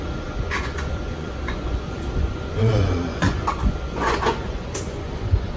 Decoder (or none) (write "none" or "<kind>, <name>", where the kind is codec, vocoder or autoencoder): vocoder, Vocos